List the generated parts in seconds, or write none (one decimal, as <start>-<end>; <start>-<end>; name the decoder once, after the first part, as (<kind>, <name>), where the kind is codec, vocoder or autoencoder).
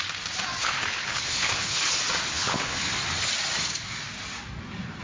0.6-1.9 (codec, HILCodec); 2.3-2.9